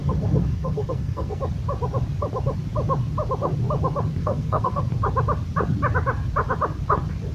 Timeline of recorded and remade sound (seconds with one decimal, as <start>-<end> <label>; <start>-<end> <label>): 0.0-1.4 remade; 1.4-4.2 recorded; 4.2-4.8 remade; 4.8-7.3 recorded